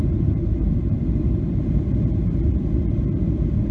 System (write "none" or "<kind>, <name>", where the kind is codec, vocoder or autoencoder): none